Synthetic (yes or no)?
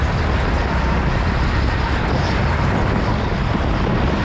no